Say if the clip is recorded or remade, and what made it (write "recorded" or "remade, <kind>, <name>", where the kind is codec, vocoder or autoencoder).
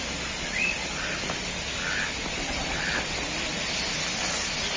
recorded